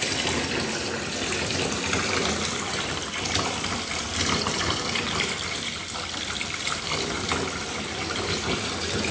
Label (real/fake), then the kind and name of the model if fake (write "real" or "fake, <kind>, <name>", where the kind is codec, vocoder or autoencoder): fake, vocoder, BigVGAN v2